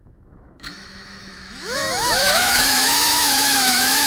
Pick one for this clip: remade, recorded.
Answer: remade